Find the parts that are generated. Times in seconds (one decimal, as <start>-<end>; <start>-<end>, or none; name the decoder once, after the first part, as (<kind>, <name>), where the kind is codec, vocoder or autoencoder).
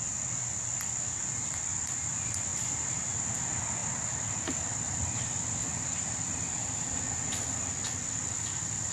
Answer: 2.5-3.1 (vocoder, BigVGAN v2); 3.8-7.7